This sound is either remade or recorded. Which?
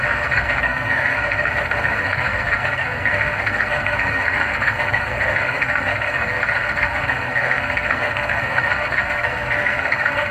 remade